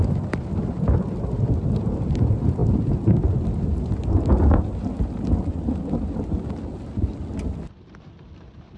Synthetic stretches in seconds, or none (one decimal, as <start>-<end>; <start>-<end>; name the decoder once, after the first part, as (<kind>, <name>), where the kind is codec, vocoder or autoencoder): none